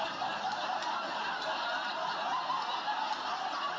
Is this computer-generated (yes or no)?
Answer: no